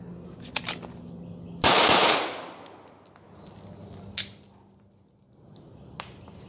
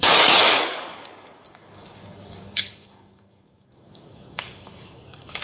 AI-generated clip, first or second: second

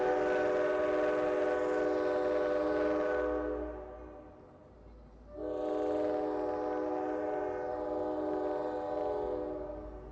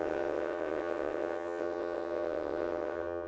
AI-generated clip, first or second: second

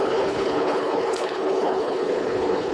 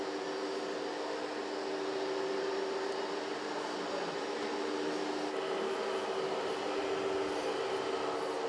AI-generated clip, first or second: first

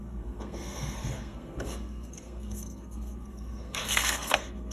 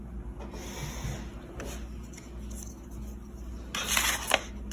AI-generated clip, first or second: first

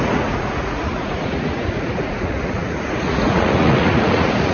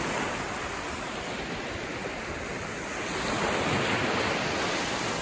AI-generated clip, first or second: first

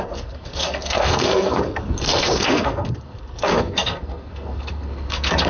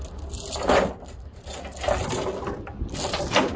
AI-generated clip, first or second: first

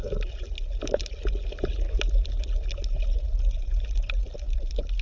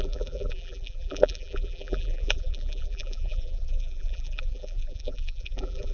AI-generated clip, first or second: second